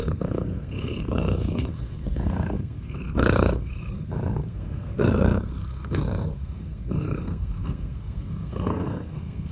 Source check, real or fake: fake